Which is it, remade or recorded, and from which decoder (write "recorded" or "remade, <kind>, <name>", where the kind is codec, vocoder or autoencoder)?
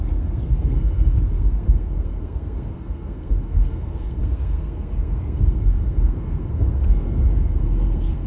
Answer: remade, codec, SNAC